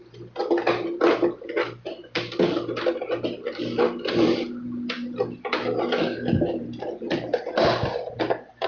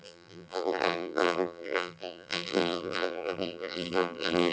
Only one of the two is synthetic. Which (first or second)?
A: second